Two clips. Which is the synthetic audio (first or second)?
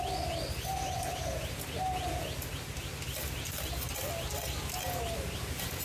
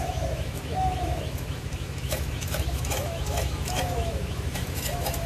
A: second